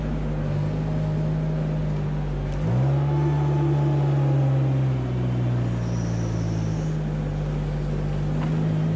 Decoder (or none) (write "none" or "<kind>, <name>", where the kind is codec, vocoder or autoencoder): none